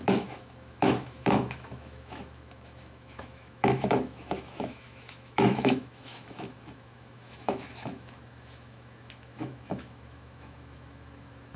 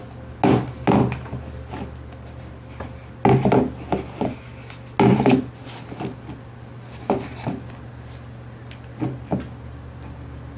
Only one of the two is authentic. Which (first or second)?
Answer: second